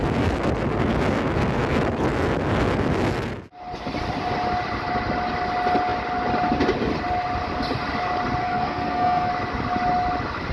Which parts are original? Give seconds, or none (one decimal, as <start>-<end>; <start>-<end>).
0.0-8.4; 9.3-10.5